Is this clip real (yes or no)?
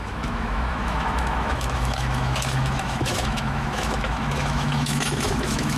no